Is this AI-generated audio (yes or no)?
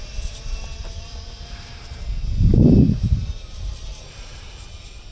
yes